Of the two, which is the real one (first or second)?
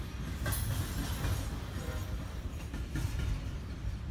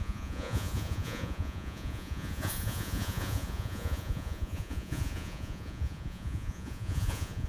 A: first